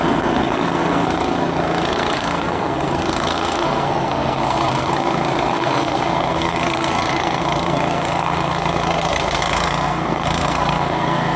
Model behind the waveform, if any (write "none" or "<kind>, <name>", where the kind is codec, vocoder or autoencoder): codec, SNAC